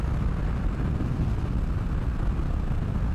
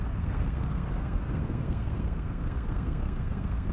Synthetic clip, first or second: second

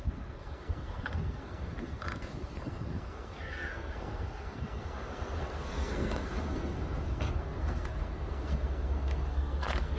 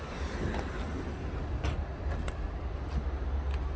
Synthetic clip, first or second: first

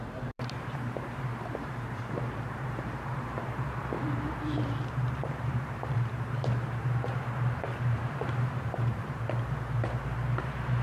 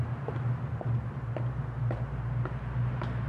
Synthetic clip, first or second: first